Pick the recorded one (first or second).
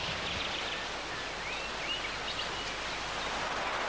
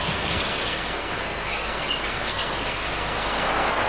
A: first